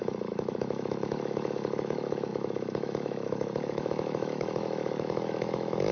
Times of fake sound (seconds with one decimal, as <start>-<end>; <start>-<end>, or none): 0.0-5.9

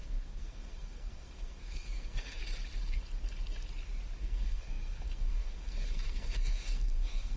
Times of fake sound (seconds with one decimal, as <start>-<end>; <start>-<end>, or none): 0.0-2.4; 4.2-7.4

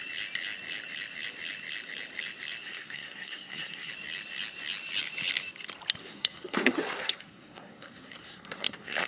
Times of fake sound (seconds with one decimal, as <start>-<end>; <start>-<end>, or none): 2.6-3.9; 6.0-9.1

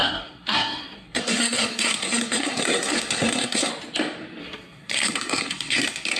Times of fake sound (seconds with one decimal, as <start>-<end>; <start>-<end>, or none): 0.0-3.7; 4.4-6.2

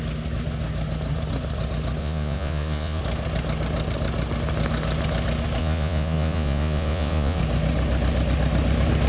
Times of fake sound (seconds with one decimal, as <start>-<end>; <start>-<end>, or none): 2.0-3.0; 5.6-7.4

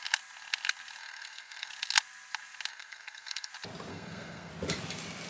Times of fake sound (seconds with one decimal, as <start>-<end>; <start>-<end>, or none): 1.0-1.7; 2.7-3.5; 3.9-4.5